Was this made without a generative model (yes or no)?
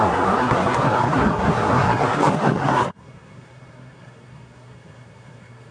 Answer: no